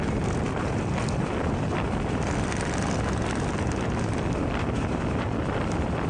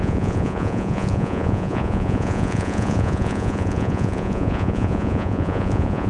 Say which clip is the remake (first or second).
second